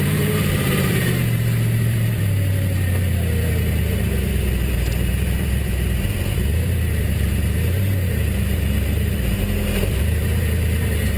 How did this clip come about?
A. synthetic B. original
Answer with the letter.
A